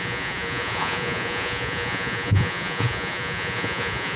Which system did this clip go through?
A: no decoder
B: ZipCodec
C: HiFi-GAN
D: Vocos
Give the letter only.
D